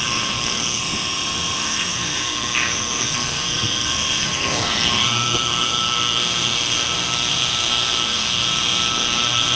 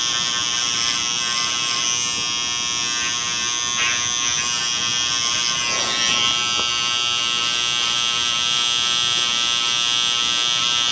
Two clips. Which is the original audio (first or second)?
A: second